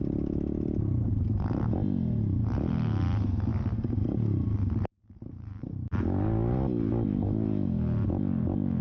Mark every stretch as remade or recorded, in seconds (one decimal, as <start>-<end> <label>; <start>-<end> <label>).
0.0-3.5 recorded; 3.5-5.9 remade; 5.9-8.8 recorded